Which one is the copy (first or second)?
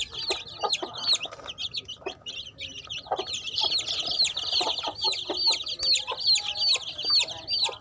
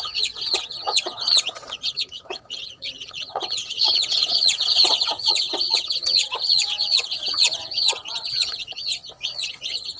second